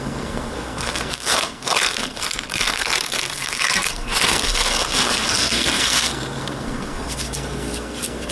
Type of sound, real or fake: fake